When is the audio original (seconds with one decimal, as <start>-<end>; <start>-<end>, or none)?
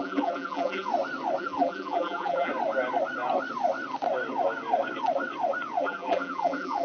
0.9-1.4; 2.5-5.8